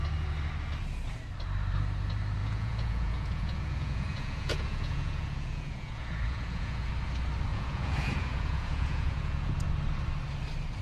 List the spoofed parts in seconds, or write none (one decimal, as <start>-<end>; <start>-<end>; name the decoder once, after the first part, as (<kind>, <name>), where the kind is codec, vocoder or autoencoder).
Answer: 2.4-6.9 (vocoder, Vocos); 7.5-9.5